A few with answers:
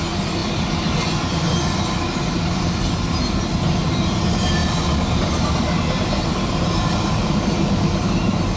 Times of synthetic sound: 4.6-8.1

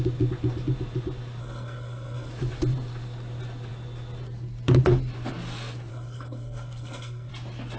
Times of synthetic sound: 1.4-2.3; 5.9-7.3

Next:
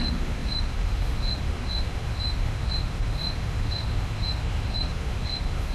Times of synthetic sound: 0.0-5.7

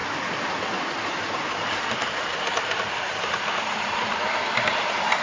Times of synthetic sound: none

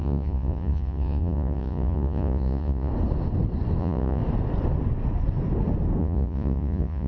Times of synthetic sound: 0.0-2.9; 3.8-4.2; 6.0-7.1

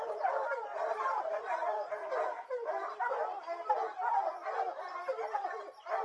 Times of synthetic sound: none